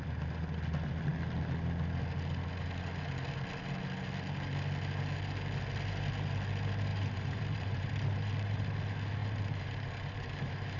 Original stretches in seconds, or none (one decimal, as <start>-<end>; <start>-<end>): 0.0-6.9; 8.6-9.2